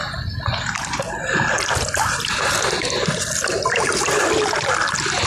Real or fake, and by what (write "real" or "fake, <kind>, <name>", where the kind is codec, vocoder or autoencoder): real